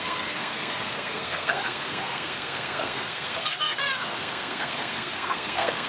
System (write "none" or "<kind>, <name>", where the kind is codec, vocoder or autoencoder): codec, SNAC